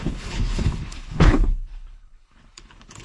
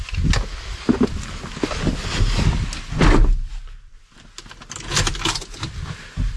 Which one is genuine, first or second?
second